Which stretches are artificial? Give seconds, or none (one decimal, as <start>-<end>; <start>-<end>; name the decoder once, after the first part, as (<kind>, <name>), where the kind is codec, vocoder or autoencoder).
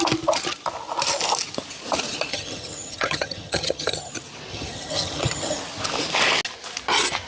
2.3-4.1 (vocoder, HiFi-GAN); 4.5-5.6